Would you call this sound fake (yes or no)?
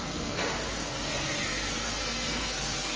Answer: yes